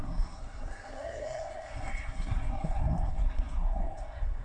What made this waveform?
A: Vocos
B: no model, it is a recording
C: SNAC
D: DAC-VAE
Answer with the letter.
C